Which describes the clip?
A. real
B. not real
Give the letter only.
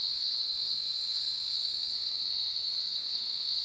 B